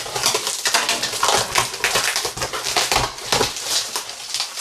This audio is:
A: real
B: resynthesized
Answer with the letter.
A